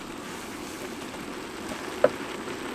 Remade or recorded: recorded